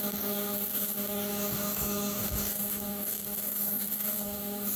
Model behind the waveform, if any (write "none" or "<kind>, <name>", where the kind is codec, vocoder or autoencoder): codec, DAC